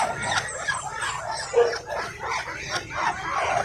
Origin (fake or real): real